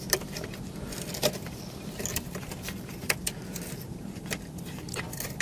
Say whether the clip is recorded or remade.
remade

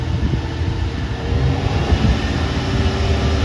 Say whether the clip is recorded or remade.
recorded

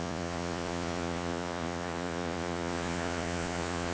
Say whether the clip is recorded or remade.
remade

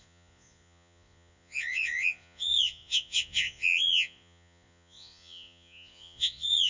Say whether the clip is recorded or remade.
remade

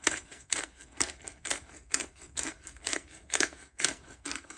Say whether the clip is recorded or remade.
remade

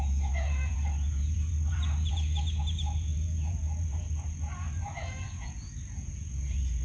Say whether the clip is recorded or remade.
remade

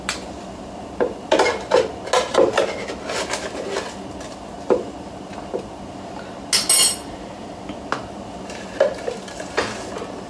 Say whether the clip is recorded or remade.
recorded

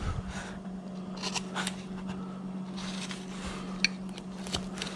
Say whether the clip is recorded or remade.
recorded